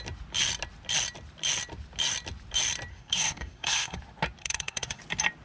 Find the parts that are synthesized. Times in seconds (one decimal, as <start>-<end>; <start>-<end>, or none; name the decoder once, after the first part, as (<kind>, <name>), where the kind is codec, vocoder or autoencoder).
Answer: 2.9-4.0 (codec, SNAC); 4.4-5.0